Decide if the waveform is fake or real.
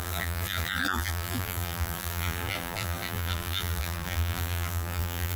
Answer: fake